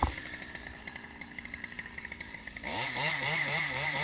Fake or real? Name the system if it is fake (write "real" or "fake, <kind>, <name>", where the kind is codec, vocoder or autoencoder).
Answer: fake, vocoder, BigVGAN v2